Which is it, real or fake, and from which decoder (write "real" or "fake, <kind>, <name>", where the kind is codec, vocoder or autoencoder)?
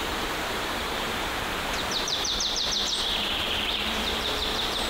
fake, vocoder, BigVGAN v2